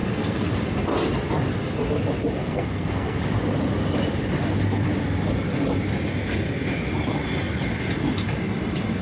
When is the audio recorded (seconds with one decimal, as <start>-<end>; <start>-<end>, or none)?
0.5-2.4; 3.2-9.0

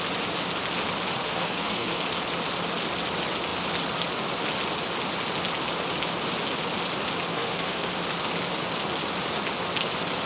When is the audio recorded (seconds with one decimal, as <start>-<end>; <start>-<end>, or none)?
0.0-1.2; 2.0-7.3; 7.9-10.3

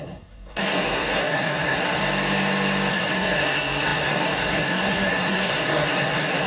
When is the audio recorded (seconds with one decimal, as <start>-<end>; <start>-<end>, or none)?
2.0-2.9

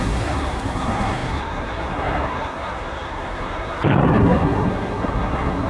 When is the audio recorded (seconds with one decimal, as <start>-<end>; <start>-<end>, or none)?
none